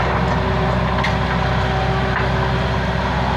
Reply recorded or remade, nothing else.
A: recorded